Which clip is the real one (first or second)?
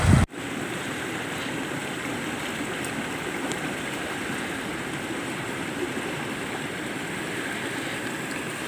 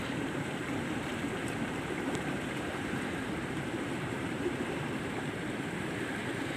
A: first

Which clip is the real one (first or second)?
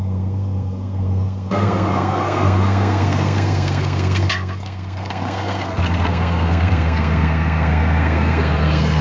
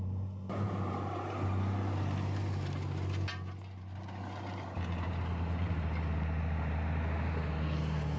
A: second